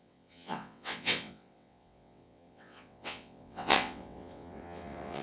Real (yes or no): no